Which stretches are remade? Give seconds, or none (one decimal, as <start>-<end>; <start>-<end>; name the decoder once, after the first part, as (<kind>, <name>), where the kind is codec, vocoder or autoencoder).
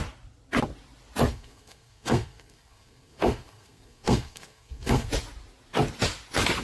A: 1.3-5.1 (codec, SNAC)